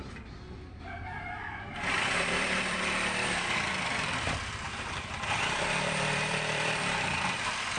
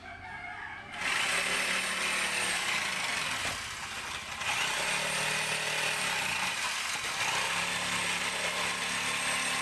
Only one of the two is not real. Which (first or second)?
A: first